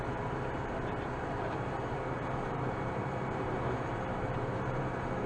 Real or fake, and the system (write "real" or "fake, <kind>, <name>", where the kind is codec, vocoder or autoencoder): fake, vocoder, BigVGAN v2